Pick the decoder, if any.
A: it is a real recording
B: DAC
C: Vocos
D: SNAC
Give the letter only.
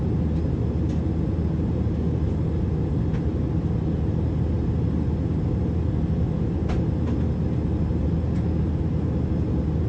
A